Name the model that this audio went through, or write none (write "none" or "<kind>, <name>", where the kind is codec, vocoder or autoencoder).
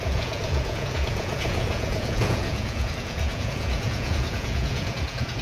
vocoder, Vocos